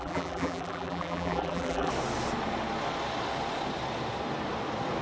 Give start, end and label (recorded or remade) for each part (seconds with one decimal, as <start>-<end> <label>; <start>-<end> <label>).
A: 0.0-1.9 remade; 1.9-5.0 recorded